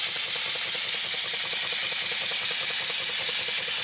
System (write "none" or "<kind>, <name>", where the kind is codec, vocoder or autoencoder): none